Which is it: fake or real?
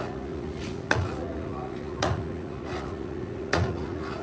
fake